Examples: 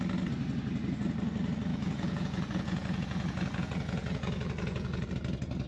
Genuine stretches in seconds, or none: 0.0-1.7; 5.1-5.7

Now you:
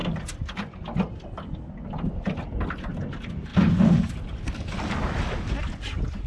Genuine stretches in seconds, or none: 0.0-6.3

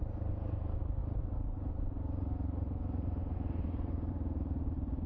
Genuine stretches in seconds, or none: 1.0-4.1

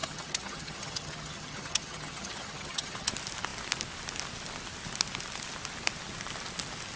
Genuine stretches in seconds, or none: 3.1-7.0

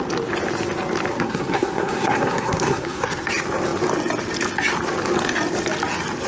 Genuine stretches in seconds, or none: 0.0-1.1; 3.3-6.3